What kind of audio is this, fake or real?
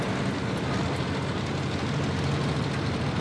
real